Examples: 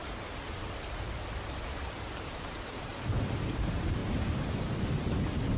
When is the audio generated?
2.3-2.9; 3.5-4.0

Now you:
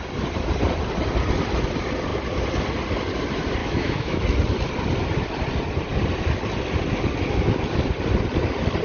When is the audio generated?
3.6-4.2

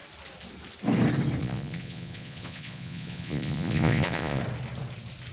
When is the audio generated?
1.4-4.4

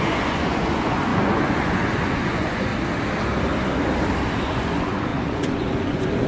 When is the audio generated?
0.0-2.7; 4.4-6.3